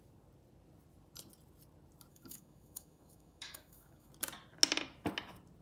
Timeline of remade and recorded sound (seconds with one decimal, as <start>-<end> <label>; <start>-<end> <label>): 0.0-2.1 recorded; 2.1-4.1 remade; 4.1-5.6 recorded